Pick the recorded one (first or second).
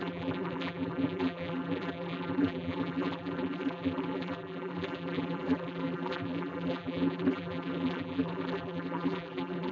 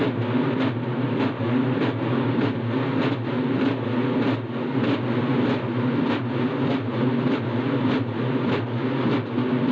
second